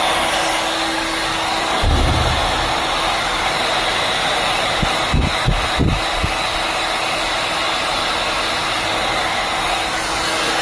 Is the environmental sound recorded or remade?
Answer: recorded